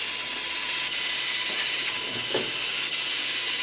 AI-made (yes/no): no